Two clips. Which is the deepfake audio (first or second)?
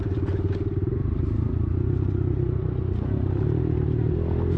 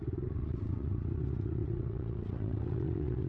second